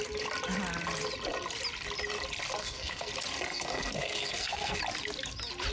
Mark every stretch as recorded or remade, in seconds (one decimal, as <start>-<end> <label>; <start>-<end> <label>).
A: 0.0-2.6 recorded; 2.6-3.1 remade; 3.1-3.5 recorded; 3.5-4.8 remade; 4.8-5.7 recorded